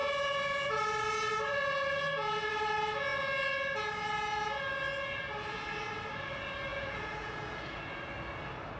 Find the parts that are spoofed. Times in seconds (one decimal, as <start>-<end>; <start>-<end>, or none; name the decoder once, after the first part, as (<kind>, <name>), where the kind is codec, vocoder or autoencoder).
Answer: 0.0-0.8 (vocoder, Vocos); 6.7-7.8